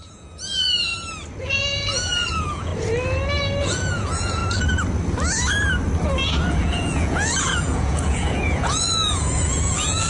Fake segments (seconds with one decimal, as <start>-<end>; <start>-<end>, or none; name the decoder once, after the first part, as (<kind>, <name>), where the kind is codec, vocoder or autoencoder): 0.0-0.9 (vocoder, Vocos); 1.4-2.7; 3.6-4.4; 6.5-10.1